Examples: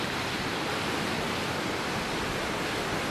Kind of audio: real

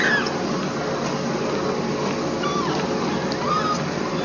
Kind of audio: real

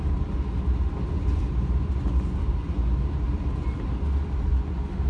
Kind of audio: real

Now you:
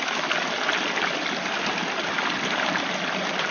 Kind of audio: real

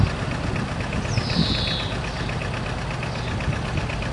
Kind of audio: real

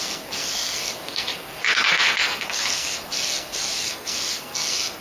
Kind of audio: fake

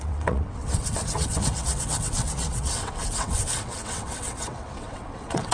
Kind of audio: fake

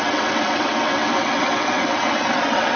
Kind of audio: fake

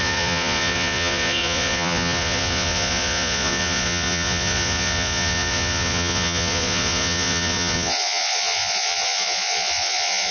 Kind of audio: fake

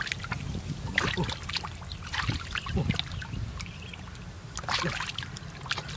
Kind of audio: real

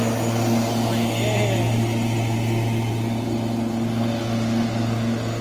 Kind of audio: real